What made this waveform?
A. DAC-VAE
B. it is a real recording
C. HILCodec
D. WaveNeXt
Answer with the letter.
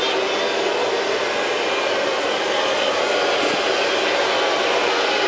B